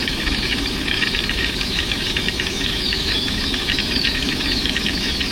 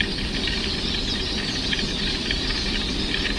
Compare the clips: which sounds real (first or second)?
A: second